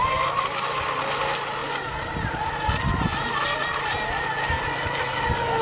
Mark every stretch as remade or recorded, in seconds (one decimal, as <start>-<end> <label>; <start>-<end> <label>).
0.0-5.6 recorded